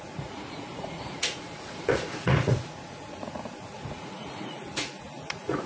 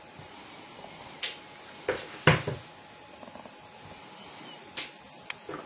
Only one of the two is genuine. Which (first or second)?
second